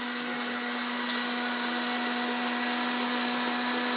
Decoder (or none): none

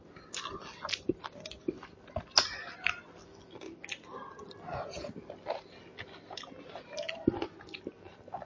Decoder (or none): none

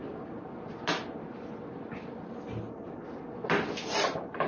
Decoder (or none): none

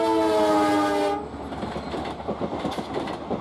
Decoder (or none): none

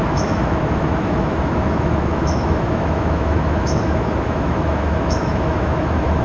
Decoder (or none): autoencoder, DAC-VAE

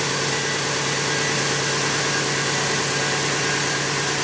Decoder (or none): none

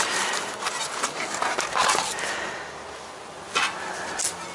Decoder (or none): none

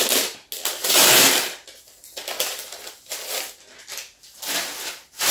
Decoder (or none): none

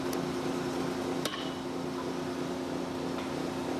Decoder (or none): none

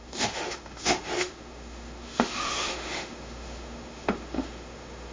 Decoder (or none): autoencoder, DAC-VAE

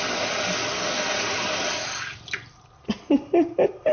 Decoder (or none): none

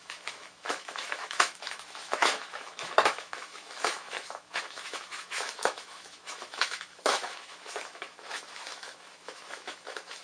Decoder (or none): autoencoder, DAC-VAE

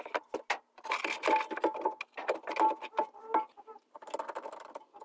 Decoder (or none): none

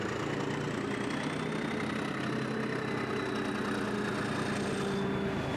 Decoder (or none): none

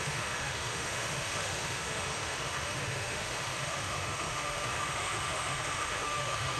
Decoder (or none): autoencoder, DAC-VAE